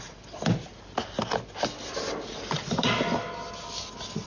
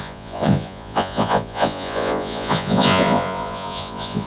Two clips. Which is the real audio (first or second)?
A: first